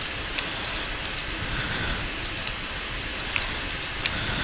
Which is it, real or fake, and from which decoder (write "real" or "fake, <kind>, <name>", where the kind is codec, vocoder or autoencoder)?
real